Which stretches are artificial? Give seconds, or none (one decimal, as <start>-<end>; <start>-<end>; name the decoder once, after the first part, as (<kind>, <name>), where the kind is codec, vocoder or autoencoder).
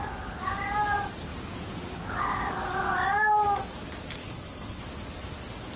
4.2-4.8 (codec, HILCodec)